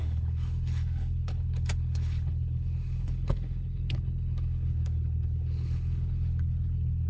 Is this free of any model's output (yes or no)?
no